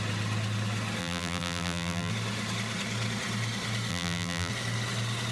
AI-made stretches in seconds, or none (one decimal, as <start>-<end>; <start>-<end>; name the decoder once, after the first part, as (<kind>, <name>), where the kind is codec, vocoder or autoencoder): 1.0-2.1 (vocoder, BigVGAN v2); 3.9-4.5